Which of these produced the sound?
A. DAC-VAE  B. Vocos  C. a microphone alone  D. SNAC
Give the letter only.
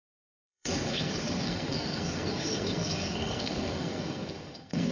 D